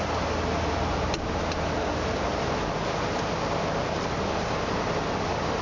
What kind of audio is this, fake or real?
real